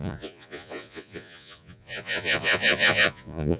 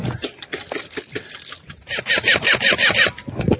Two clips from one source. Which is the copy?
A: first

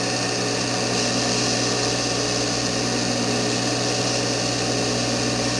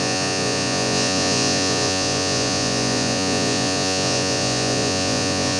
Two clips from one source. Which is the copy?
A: second